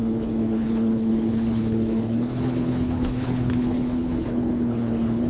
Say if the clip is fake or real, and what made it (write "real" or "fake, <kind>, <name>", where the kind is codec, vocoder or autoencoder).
fake, codec, HILCodec